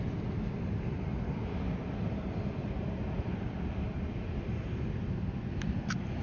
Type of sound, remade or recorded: recorded